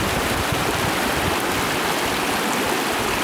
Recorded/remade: recorded